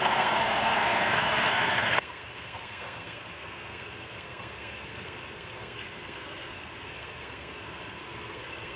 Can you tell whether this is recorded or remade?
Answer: remade